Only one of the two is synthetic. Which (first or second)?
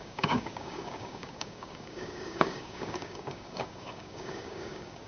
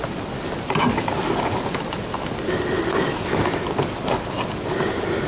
first